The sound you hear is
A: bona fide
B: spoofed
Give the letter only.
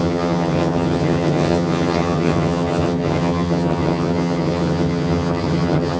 B